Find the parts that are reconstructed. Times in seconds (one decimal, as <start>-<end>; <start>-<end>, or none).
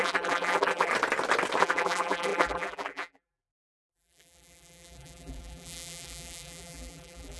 0.0-0.9; 1.6-7.4